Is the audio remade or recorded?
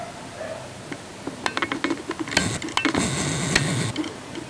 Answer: recorded